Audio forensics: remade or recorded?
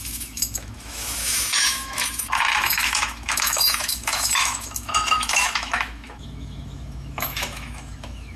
remade